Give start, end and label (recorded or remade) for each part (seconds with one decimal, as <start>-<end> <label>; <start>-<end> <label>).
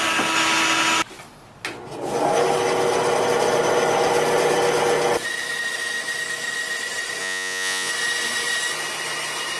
0.0-7.2 recorded; 7.2-7.9 remade; 7.9-9.6 recorded